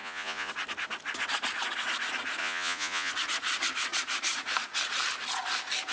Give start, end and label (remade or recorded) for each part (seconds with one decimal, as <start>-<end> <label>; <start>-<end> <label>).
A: 0.0-0.5 remade; 0.5-2.4 recorded; 2.4-3.1 remade; 3.1-5.9 recorded